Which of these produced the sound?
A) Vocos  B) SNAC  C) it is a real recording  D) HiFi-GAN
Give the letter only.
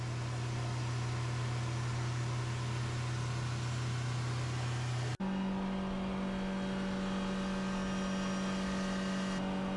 C